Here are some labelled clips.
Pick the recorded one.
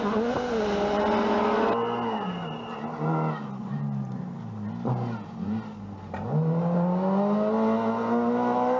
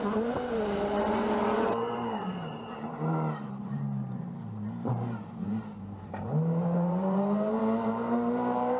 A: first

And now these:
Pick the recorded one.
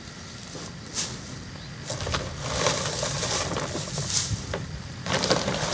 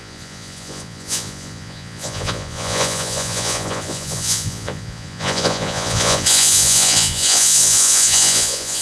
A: first